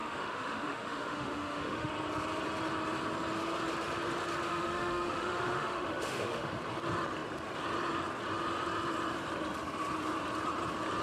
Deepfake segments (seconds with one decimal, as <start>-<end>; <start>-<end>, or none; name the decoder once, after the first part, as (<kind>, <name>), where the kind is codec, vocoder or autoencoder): 0.0-1.9 (autoencoder, DAC-VAE); 4.5-6.5